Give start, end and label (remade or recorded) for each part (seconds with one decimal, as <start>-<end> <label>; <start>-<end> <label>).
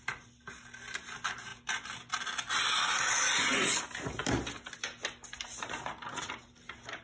0.0-7.0 recorded